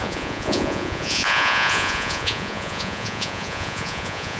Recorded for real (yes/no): no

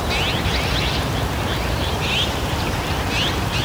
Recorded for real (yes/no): yes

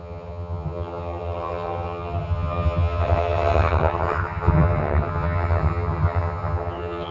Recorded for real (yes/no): no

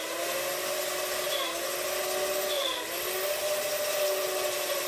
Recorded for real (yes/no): yes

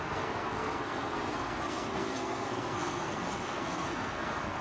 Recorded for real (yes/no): no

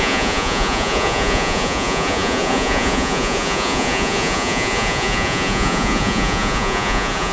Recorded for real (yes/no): no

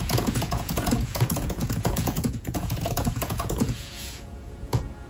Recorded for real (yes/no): no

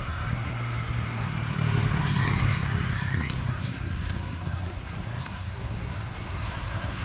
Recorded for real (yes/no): no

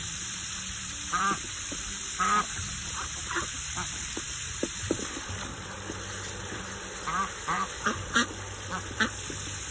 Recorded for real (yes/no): no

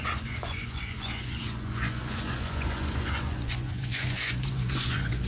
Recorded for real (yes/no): no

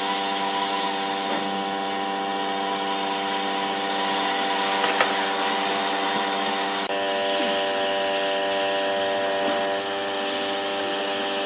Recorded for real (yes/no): yes